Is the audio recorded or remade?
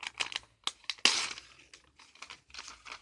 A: recorded